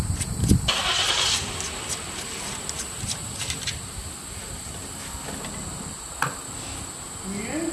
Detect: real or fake real